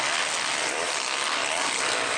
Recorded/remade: recorded